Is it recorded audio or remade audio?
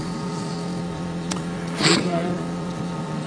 remade